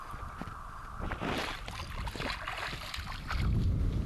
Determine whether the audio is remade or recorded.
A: recorded